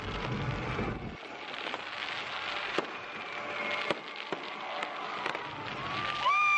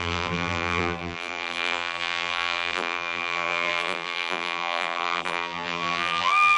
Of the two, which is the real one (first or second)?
first